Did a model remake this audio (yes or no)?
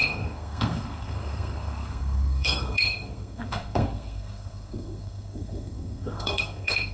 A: yes